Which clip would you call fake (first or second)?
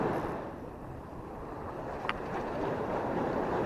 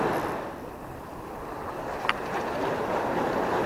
first